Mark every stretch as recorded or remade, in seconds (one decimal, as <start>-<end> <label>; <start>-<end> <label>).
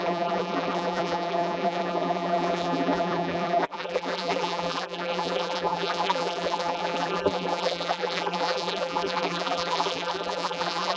0.0-11.0 remade